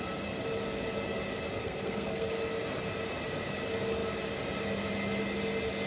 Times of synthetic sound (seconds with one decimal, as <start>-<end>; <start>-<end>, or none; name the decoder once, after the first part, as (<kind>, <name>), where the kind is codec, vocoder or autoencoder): 1.6-2.3 (codec, SNAC)